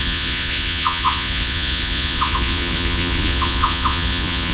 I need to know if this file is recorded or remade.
remade